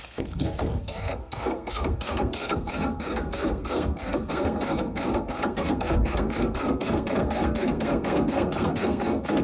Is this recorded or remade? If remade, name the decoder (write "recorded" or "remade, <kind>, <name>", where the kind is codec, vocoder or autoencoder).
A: remade, codec, SNAC